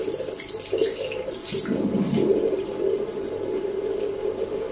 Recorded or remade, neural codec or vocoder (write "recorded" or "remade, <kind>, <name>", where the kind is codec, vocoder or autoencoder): recorded